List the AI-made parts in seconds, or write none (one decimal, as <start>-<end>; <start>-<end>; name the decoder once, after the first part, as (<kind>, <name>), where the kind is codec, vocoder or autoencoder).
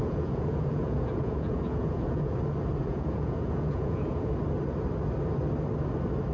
0.0-2.4 (vocoder, Vocos); 2.8-4.3